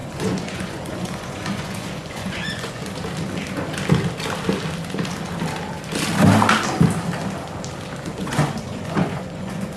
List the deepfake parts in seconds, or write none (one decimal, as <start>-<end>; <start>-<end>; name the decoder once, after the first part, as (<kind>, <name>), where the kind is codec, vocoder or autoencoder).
0.0-2.8 (vocoder, Vocos); 8.0-9.8